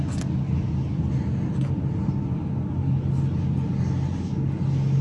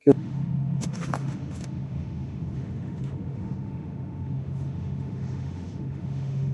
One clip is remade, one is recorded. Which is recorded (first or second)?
first